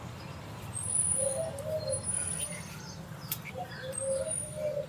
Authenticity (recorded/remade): recorded